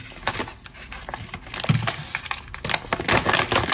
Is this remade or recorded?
recorded